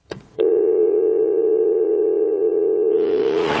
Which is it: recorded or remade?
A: remade